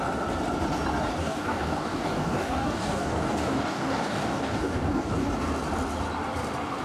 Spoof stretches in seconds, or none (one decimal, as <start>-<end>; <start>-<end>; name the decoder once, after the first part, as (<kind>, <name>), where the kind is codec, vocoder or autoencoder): 1.2-5.3 (codec, DAC)